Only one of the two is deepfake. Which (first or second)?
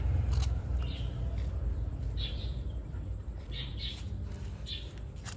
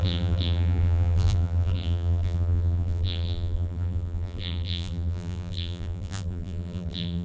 second